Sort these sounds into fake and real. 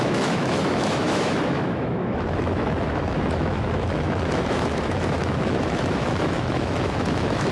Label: fake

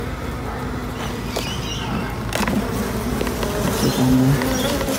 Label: real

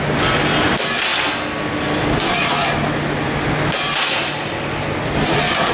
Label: real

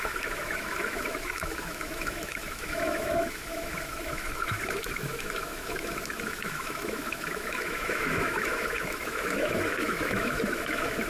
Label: fake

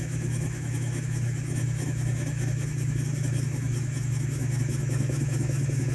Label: fake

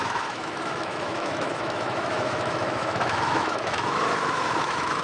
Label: fake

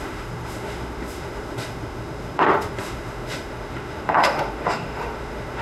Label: fake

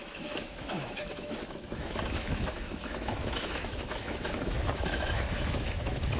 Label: fake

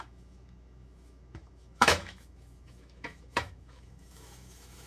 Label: fake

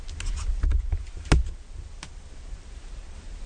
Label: real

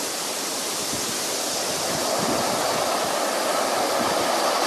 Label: real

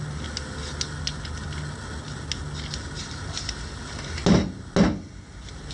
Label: real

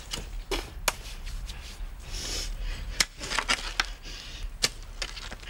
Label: real